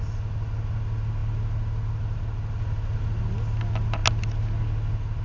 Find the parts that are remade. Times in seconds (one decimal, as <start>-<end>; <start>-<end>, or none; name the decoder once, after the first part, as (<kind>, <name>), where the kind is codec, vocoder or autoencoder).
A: none